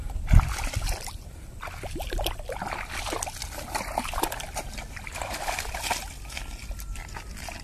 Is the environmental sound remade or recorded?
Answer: recorded